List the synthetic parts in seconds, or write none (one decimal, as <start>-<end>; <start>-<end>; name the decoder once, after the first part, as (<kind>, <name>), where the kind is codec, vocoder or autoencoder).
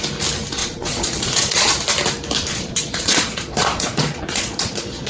0.6-1.7 (vocoder, Vocos); 2.5-5.1